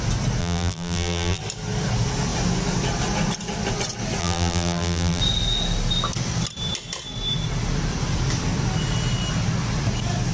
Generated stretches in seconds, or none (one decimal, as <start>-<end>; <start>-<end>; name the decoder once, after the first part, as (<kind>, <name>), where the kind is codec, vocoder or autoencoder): 0.4-1.4 (vocoder, BigVGAN v2); 4.2-5.2